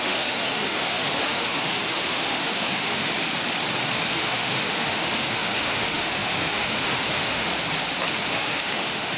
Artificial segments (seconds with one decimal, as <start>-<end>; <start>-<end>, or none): 0.0-3.1; 4.1-7.5; 8.3-9.2